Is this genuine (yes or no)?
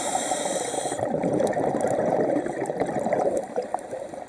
no